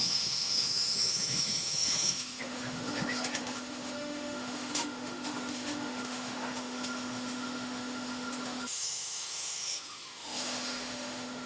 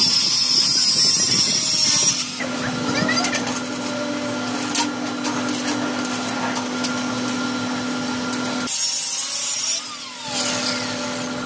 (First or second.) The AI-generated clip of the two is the first